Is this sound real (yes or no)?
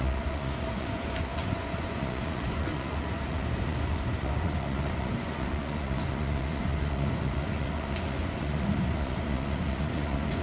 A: no